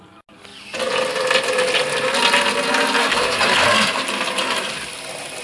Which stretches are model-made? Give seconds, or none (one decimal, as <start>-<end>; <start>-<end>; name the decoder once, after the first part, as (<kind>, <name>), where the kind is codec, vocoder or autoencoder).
3.0-4.0 (codec, SNAC)